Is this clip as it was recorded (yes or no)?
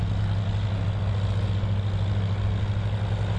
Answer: yes